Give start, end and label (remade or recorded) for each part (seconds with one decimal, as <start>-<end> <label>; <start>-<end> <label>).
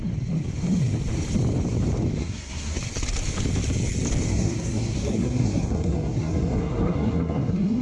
0.0-2.2 recorded; 2.2-2.8 remade; 2.8-4.3 recorded; 4.3-7.8 remade